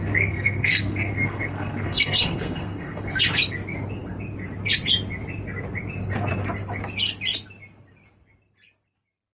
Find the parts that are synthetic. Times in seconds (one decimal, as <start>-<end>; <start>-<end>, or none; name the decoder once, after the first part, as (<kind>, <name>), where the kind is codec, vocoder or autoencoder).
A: 0.0-3.2 (codec, SNAC)